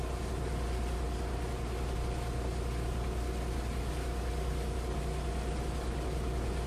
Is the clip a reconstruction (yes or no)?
no